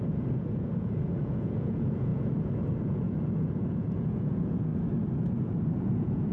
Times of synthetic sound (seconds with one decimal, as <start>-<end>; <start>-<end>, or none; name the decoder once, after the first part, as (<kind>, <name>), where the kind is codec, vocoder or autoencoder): 0.0-4.7 (vocoder, Vocos); 5.2-6.3